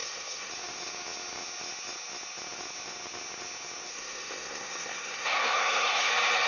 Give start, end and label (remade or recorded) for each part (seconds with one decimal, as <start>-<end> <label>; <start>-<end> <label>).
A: 0.0-0.5 remade; 0.5-3.9 recorded; 3.9-6.1 remade; 6.1-6.5 recorded